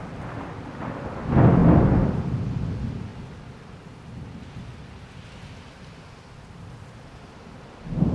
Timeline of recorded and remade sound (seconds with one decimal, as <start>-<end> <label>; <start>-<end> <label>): 0.0-1.6 recorded; 1.6-2.1 remade; 2.1-8.1 recorded